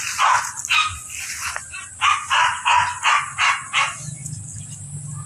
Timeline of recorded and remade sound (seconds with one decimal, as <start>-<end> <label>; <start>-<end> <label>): 0.0-5.3 recorded